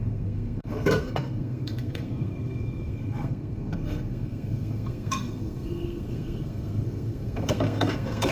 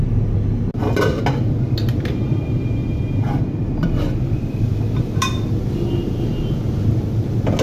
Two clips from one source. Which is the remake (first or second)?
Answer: first